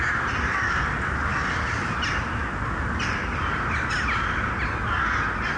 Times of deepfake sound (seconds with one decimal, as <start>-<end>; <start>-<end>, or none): none